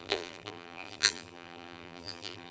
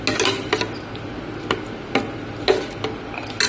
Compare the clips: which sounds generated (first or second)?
first